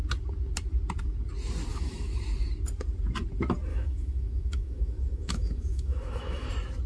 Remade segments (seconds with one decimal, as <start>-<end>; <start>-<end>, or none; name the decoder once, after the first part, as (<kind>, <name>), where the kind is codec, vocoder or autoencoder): 1.7-2.2 (autoencoder, DAC-VAE); 3.7-6.5